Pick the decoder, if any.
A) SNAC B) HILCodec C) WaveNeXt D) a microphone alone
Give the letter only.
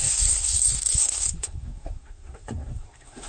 A